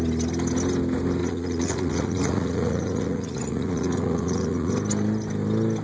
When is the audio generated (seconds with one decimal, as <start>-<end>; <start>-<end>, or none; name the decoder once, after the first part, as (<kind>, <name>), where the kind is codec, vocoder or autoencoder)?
1.2-4.7 (vocoder, Vocos)